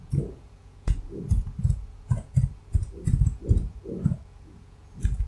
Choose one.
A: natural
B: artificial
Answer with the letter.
B